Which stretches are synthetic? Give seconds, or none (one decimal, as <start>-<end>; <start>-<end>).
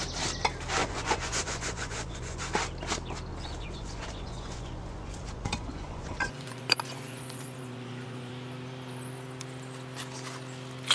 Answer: 0.8-2.4; 3.3-8.3